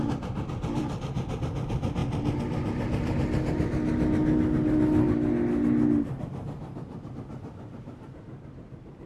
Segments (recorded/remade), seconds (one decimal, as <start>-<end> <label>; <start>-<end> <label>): 0.0-2.0 remade; 2.0-7.1 recorded; 7.1-9.1 remade